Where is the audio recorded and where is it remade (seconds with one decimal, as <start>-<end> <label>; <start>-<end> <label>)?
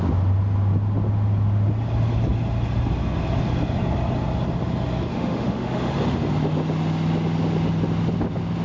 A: 0.0-5.1 recorded; 5.1-5.9 remade; 5.9-8.6 recorded